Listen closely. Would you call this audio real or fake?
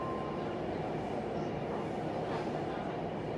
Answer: real